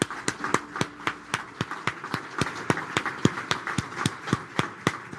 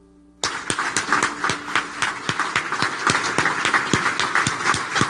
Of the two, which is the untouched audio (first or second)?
second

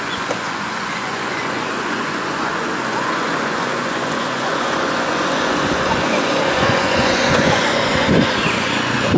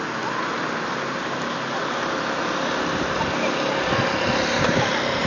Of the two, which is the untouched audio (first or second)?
second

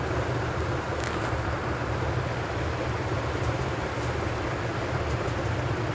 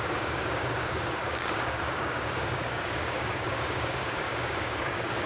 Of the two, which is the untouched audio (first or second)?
first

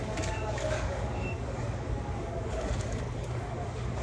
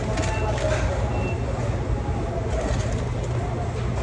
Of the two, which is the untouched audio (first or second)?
second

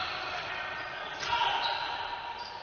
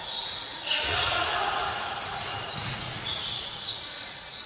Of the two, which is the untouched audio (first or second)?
first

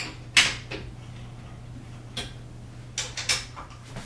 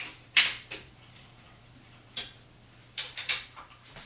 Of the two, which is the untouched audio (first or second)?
first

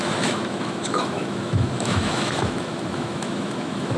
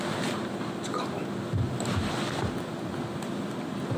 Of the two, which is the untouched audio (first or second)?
second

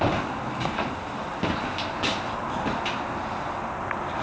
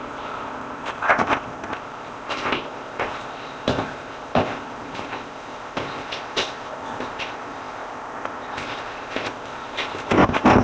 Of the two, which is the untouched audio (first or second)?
first